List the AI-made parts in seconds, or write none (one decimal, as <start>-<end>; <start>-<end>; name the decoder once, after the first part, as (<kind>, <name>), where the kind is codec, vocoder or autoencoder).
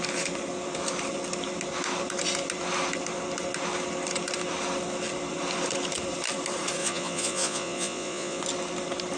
6.8-8.4 (vocoder, Vocos)